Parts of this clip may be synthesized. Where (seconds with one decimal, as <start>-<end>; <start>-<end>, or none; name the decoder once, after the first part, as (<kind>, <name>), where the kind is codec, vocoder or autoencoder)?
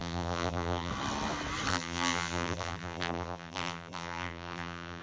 0.0-0.9 (vocoder, BigVGAN v2); 1.7-5.0